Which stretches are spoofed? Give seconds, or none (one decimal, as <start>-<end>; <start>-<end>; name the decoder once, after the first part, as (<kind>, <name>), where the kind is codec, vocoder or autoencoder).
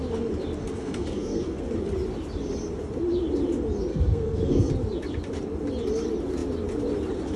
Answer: 0.5-1.6 (codec, SNAC); 3.9-4.7